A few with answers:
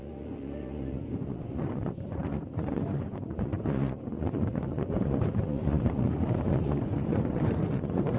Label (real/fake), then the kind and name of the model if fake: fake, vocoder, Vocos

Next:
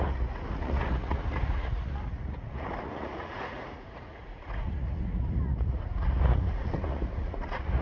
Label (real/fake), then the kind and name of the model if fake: fake, vocoder, Vocos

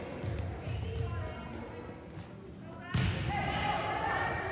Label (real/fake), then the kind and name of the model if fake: real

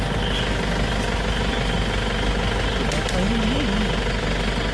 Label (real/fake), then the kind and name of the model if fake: real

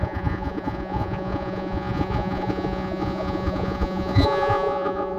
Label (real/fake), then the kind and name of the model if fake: fake, vocoder, Vocos